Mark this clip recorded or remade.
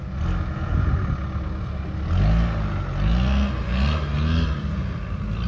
recorded